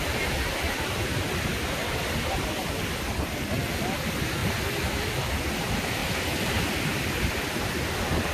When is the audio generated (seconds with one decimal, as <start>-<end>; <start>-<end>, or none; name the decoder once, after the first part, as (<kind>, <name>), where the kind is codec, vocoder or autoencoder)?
0.0-4.4 (vocoder, BigVGAN v2); 5.0-8.3